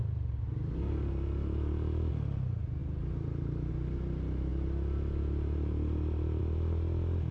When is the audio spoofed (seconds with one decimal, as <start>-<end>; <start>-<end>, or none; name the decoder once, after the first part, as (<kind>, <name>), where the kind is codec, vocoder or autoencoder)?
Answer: none